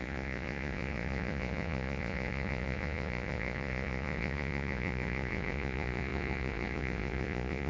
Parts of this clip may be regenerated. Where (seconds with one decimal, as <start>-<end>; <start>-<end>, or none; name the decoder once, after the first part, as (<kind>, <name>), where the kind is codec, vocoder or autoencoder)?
0.0-7.7 (vocoder, Vocos)